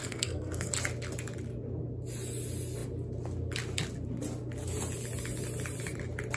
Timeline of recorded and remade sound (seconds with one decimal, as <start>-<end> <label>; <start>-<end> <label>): 0.0-0.7 remade; 0.7-6.4 recorded